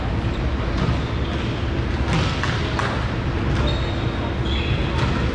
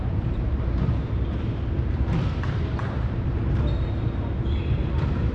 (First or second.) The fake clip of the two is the second